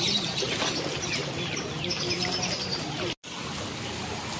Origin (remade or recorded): recorded